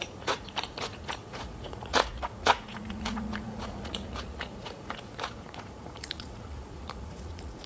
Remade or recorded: remade